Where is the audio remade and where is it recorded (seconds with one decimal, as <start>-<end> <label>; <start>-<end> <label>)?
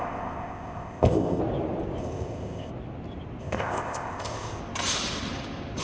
0.0-1.4 remade; 1.4-2.0 recorded; 2.0-2.7 remade; 2.7-3.4 recorded; 3.4-4.6 remade; 4.6-5.8 recorded